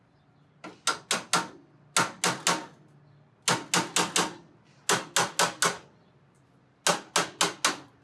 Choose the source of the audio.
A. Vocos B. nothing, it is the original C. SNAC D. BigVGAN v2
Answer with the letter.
B